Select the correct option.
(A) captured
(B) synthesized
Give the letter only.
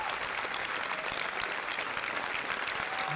A